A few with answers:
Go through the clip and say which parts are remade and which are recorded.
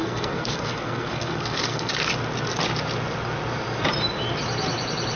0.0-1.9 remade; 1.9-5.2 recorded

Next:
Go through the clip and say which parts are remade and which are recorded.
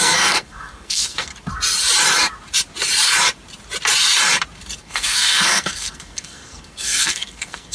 0.0-1.3 remade; 1.3-4.8 recorded; 4.8-7.7 remade